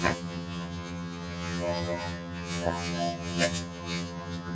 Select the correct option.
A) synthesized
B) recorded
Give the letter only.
A